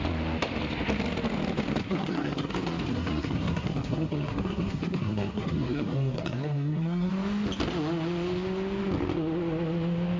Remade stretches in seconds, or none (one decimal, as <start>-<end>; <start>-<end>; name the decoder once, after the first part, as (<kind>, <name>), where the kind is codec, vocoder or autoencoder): 1.8-2.5 (codec, SNAC); 2.9-7.1